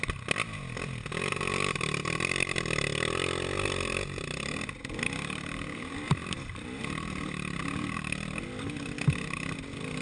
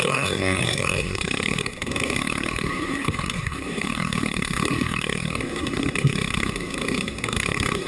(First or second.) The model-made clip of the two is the second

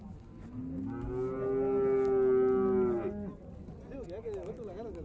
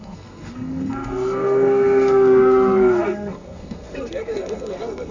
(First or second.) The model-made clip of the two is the second